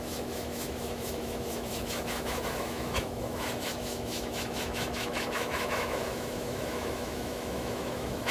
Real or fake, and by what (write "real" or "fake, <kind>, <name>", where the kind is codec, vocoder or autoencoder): fake, autoencoder, DAC-VAE